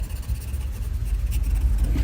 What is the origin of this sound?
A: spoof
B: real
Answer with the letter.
B